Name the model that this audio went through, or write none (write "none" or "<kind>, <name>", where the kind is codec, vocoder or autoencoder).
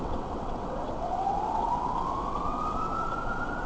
vocoder, WaveNeXt